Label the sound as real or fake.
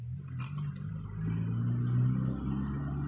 real